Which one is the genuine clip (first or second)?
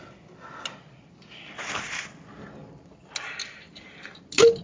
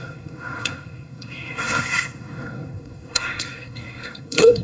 first